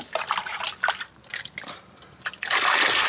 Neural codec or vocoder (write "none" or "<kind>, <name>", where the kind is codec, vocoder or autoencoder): none